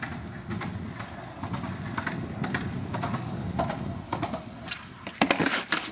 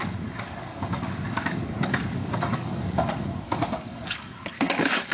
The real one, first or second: first